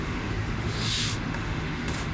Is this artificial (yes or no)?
yes